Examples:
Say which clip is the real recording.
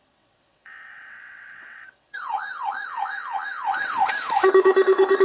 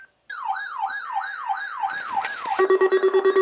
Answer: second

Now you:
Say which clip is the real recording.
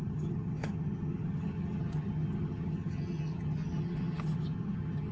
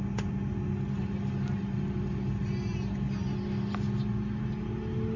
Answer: second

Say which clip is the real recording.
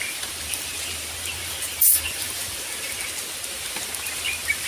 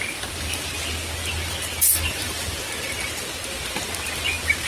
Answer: second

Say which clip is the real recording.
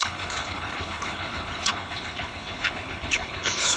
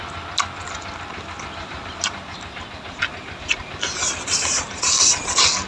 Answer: second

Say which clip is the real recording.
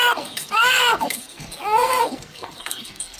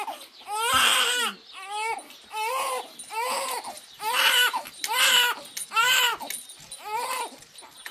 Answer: second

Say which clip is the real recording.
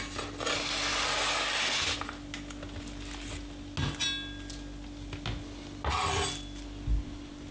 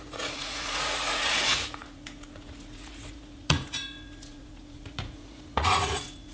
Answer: first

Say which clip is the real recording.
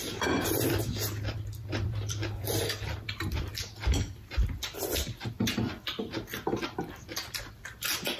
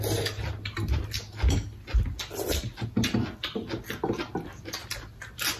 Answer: second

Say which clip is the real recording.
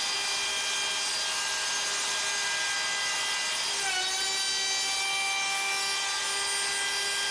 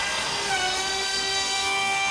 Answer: first